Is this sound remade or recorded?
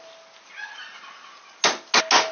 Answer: recorded